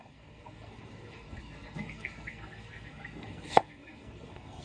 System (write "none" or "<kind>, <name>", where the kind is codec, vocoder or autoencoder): codec, SNAC